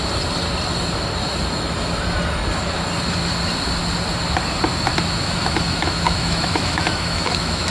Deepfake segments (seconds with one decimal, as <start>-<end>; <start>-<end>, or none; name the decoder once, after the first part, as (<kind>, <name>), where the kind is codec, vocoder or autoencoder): 5.2-7.7 (autoencoder, DAC-VAE)